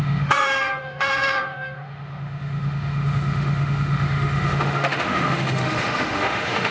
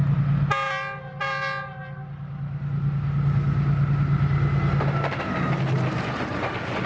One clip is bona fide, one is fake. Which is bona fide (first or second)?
second